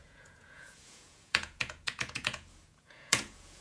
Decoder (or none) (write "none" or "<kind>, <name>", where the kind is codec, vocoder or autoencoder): vocoder, Vocos